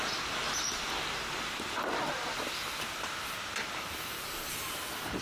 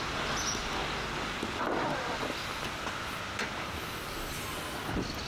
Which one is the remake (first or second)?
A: first